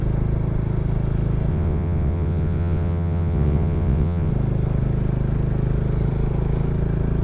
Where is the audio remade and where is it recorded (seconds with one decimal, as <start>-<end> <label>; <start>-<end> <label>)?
0.0-1.5 recorded; 1.5-4.3 remade; 4.3-7.2 recorded